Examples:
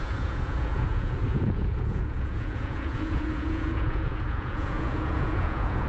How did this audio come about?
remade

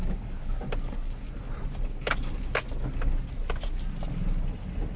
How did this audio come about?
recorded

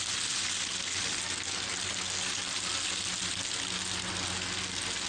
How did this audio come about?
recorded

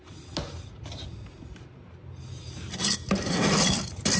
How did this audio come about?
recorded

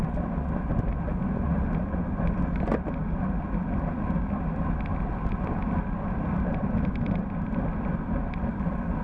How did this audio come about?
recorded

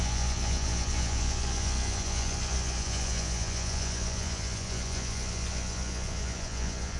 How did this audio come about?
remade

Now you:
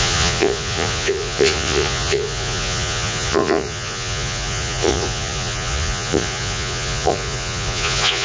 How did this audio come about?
remade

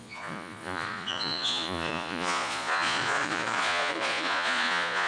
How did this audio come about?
remade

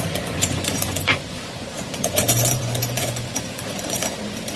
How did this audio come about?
remade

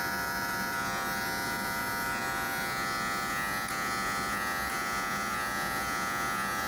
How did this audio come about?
remade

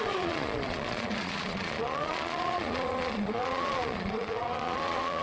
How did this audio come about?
remade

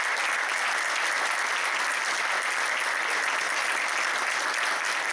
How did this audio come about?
recorded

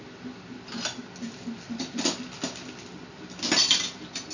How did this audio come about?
recorded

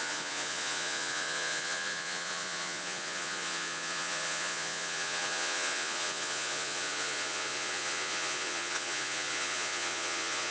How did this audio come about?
remade